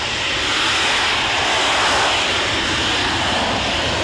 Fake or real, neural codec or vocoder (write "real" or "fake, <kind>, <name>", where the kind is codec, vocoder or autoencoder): real